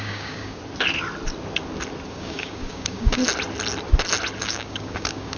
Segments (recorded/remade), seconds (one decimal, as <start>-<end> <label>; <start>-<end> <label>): 0.0-0.6 remade; 0.6-2.1 recorded; 2.1-3.2 remade; 3.2-4.4 recorded; 4.4-5.4 remade